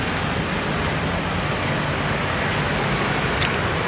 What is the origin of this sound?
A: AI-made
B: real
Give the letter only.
B